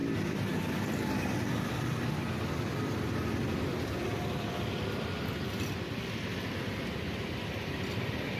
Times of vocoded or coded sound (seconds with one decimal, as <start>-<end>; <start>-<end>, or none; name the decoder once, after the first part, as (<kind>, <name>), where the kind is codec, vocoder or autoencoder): none

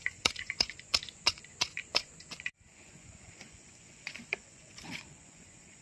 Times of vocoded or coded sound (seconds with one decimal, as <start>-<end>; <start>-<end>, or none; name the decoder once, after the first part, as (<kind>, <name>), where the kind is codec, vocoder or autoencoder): 0.0-5.8 (vocoder, Vocos)

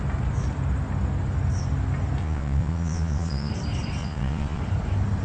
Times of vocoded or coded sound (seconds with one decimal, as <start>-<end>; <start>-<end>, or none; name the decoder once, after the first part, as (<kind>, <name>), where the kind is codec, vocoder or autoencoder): 2.2-3.5 (vocoder, Vocos); 4.0-4.6

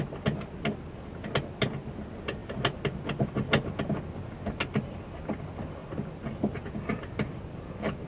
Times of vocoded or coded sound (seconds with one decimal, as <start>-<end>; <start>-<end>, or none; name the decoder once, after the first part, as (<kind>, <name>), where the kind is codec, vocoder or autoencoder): none